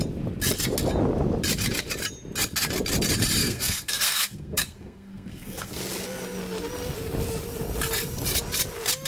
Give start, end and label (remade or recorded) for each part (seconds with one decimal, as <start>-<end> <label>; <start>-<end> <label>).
0.0-3.4 recorded; 3.4-5.8 remade; 5.8-9.1 recorded